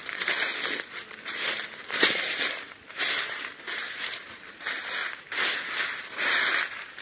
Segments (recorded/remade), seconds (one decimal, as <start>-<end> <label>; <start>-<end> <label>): 0.0-1.8 recorded; 1.8-4.4 remade; 4.4-5.0 recorded; 5.0-7.0 remade